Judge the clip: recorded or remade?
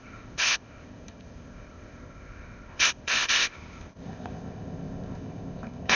remade